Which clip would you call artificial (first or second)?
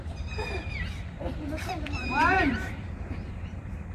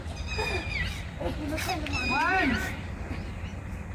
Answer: first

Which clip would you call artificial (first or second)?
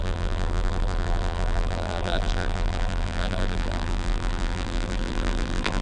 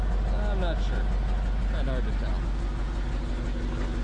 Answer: first